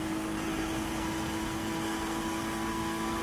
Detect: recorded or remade remade